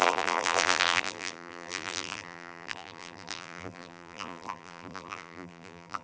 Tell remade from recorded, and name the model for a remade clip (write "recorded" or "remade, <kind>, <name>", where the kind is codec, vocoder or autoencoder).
remade, vocoder, BigVGAN v2